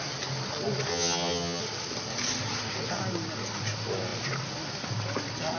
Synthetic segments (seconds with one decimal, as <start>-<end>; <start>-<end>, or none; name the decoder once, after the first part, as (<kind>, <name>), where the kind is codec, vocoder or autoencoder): 0.9-1.6 (vocoder, HiFi-GAN)